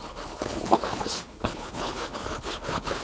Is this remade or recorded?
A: remade